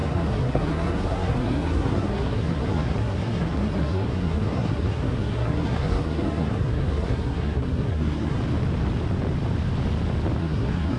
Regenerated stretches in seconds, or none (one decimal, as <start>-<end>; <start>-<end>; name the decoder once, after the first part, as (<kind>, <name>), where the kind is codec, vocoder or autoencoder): 0.0-8.4 (codec, SNAC); 10.4-11.0